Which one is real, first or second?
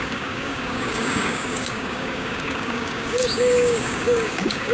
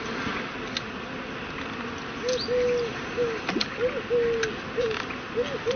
second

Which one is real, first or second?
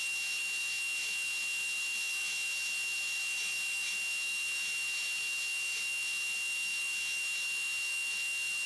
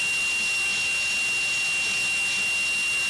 second